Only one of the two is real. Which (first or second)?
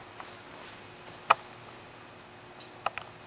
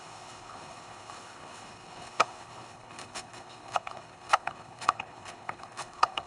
first